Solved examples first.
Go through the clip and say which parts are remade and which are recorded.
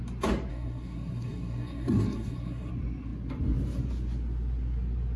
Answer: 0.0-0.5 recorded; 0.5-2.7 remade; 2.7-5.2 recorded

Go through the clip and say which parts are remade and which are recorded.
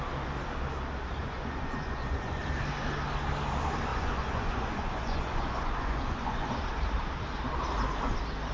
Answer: 0.0-1.2 recorded; 1.2-2.4 remade; 2.4-3.9 recorded; 3.9-6.5 remade; 6.5-8.5 recorded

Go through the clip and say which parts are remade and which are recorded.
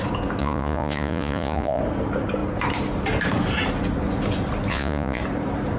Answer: 0.0-0.4 recorded; 0.4-1.8 remade; 1.8-4.7 recorded; 4.7-5.2 remade; 5.2-5.8 recorded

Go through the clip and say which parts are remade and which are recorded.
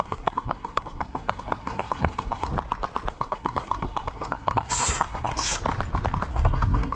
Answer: 0.0-2.5 remade; 2.5-3.1 recorded; 3.1-5.6 remade; 5.6-6.3 recorded; 6.3-7.0 remade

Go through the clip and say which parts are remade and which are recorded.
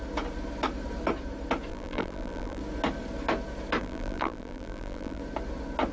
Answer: 0.0-1.7 recorded; 1.7-2.6 remade; 2.6-3.8 recorded; 3.8-5.2 remade; 5.2-5.9 recorded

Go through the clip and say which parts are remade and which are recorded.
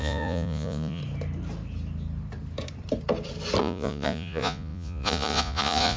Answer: 0.0-1.0 remade; 1.0-3.6 recorded; 3.6-6.0 remade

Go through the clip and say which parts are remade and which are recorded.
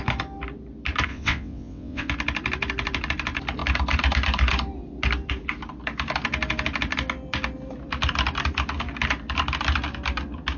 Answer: 0.0-1.1 recorded; 1.1-2.1 remade; 2.1-10.6 recorded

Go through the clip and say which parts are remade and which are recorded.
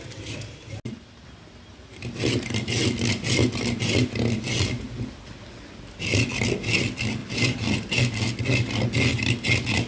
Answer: 0.0-7.2 recorded; 7.2-8.0 remade; 8.0-9.9 recorded